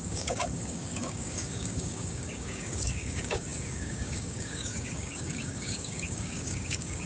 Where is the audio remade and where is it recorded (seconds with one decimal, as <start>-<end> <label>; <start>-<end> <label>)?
0.0-7.1 remade